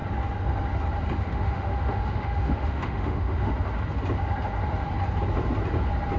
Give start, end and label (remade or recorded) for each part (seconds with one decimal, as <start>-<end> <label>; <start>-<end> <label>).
0.0-1.2 recorded; 1.2-3.5 remade; 3.5-6.2 recorded